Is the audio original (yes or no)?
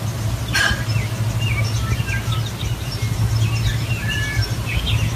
yes